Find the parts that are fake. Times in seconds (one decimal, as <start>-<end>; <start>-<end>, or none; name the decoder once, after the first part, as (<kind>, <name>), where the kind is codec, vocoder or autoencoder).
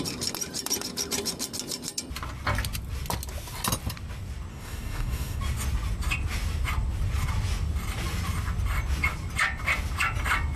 4.5-5.4 (codec, DAC)